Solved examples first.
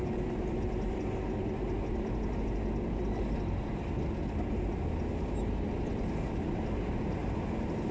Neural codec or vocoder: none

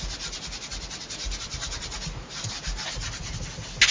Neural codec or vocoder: none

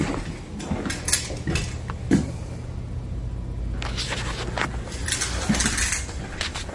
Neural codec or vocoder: none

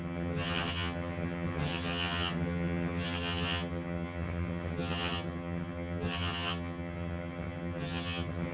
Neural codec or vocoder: vocoder, HiFi-GAN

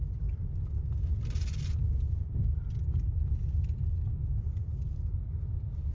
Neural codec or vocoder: none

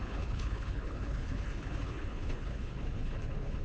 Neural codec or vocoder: codec, HILCodec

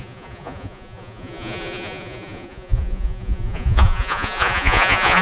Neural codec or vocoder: vocoder, Vocos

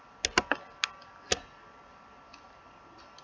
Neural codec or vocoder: none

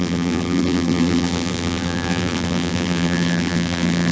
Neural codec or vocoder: vocoder, BigVGAN v2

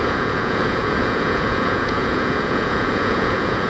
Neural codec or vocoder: vocoder, Vocos